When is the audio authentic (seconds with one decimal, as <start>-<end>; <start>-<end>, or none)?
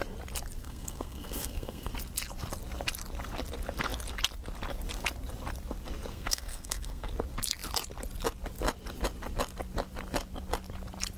0.0-0.6; 1.9-6.1; 7.1-11.2